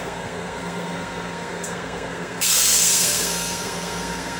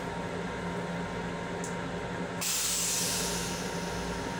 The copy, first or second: first